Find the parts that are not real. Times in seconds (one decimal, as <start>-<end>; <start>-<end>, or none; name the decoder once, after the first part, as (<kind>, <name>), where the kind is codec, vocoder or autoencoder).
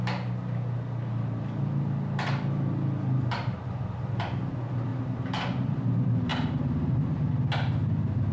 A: 4.9-5.8 (vocoder, BigVGAN v2); 6.3-7.3